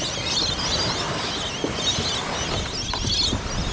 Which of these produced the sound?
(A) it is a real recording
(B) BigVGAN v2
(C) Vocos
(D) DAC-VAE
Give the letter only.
A